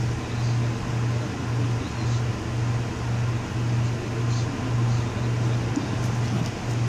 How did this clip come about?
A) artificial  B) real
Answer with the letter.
B